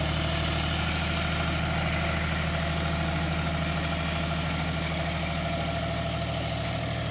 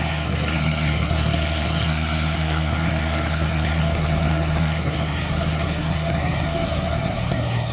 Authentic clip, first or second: first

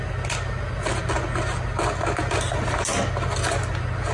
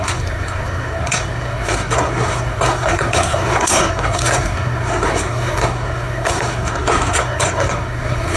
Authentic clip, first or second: first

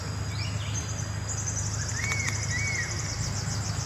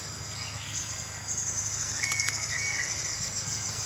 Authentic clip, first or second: first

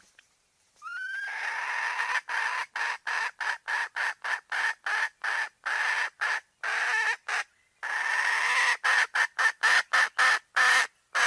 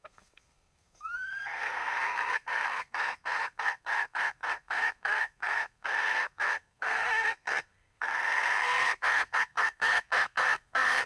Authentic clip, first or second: first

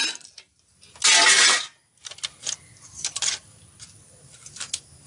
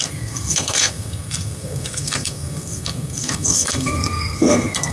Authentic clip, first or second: first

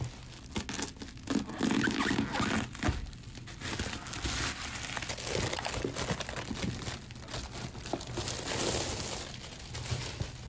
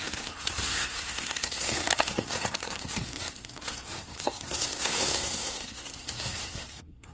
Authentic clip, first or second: first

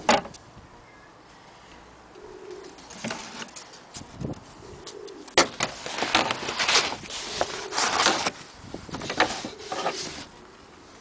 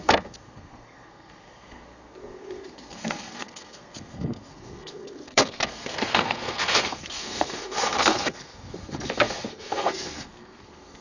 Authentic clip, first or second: first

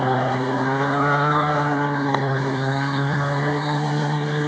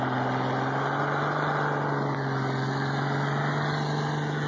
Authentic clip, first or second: second